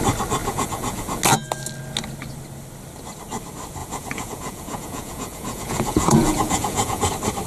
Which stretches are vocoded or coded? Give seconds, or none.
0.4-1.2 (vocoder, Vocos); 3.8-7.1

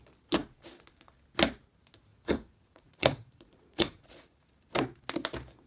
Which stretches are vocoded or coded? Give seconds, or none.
2.1-4.5 (vocoder, Vocos)

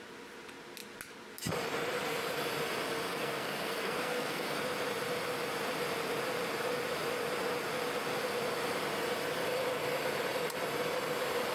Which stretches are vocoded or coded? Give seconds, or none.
3.1-4.6 (codec, SNAC)

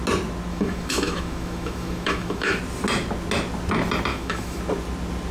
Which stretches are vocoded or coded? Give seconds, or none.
0.5-2.6 (autoencoder, DAC-VAE); 4.1-4.6